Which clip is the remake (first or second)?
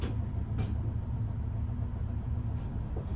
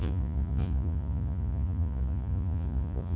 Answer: second